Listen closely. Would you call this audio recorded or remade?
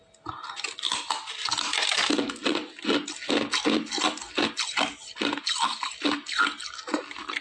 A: recorded